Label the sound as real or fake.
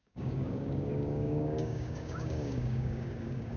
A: fake